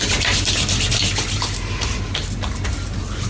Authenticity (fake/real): real